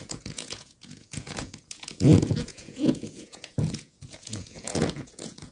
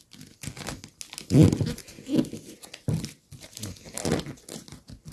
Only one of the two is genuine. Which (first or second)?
second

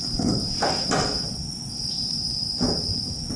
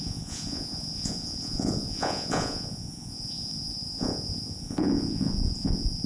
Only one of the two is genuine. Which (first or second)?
first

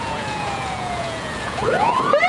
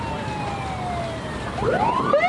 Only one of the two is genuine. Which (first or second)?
second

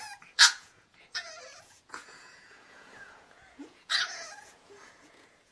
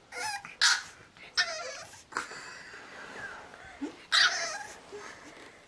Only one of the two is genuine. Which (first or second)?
second